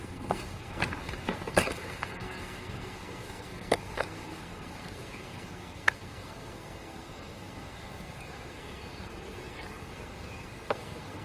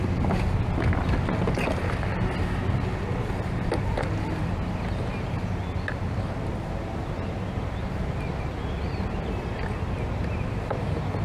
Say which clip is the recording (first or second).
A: second